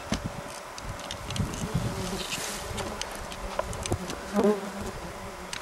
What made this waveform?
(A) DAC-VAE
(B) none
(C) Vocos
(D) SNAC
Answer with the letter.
B